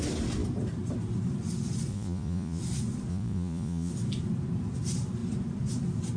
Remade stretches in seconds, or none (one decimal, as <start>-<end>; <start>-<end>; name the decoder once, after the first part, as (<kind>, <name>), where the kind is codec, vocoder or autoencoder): 1.9-2.6 (vocoder, Vocos); 3.1-3.9